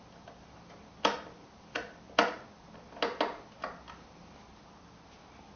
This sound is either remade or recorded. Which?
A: recorded